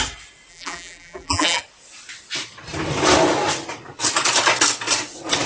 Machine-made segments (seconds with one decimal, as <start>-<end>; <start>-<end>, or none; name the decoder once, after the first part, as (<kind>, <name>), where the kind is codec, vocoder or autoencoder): 0.5-1.6 (vocoder, BigVGAN v2)